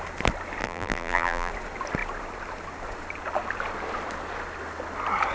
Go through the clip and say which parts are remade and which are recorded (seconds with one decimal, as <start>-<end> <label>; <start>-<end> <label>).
0.0-0.6 recorded; 0.6-1.5 remade; 1.5-5.3 recorded